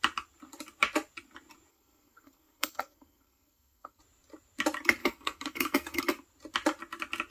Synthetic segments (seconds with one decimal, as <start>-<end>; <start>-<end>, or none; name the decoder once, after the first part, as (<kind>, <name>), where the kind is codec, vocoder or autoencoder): 1.7-4.0 (codec, SNAC); 5.0-6.0